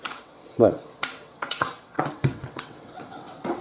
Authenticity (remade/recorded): remade